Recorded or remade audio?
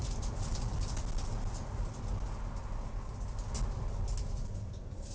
recorded